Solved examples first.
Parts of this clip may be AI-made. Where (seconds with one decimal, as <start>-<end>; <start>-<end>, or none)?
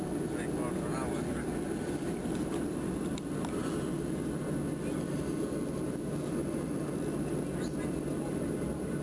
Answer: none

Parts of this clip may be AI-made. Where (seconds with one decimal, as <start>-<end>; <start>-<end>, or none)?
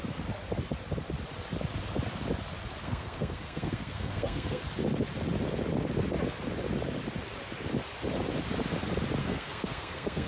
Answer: 2.8-4.6; 9.2-10.3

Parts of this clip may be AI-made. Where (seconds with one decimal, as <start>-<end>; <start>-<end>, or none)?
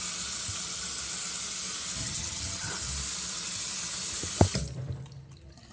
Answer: 2.0-2.7